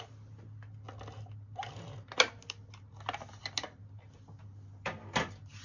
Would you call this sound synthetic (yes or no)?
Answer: no